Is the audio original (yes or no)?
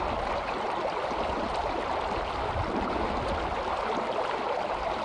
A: yes